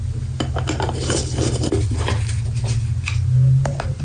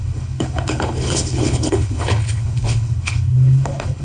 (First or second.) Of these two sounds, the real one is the first